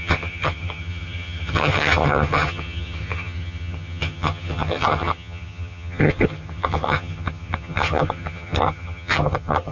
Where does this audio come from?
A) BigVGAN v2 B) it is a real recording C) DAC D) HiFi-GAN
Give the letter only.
D